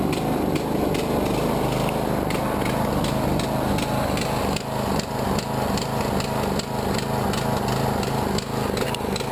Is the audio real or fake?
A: real